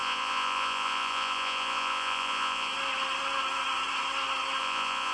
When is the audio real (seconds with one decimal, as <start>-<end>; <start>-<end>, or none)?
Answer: 2.7-4.6